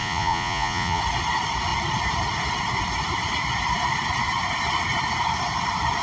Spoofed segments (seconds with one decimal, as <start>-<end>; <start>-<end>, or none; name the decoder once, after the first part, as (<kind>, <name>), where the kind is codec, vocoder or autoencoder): 0.0-1.0 (vocoder, Vocos)